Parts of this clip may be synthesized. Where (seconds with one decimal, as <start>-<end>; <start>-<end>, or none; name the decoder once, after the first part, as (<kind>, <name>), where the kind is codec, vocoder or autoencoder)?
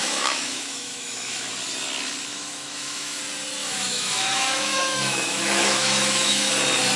0.0-1.5 (autoencoder, DAC-VAE); 2.3-3.2; 3.6-6.5